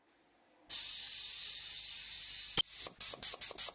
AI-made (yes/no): no